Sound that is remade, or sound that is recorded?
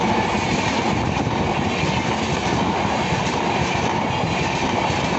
recorded